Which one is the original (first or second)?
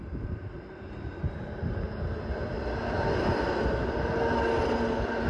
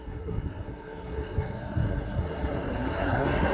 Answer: first